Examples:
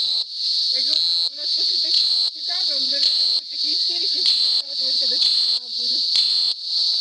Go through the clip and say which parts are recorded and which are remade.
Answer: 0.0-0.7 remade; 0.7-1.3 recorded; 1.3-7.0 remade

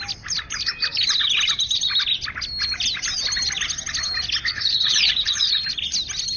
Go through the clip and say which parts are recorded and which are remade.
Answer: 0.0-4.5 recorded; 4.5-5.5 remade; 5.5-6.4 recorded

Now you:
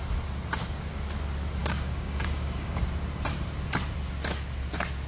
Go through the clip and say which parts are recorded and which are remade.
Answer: 0.0-1.6 recorded; 1.6-2.8 remade; 2.8-5.1 recorded